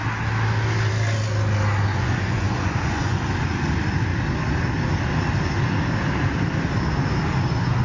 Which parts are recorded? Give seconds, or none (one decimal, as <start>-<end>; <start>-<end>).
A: 0.0-1.9; 3.2-7.8